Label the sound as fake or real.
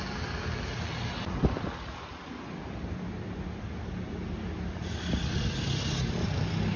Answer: real